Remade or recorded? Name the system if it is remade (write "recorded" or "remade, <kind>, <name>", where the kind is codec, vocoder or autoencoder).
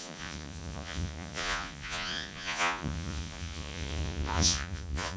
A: remade, vocoder, Vocos